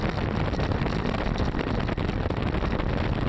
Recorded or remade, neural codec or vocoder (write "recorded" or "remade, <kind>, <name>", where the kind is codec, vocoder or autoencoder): recorded